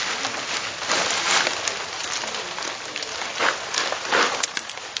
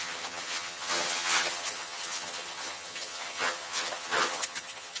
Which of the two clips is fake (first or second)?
second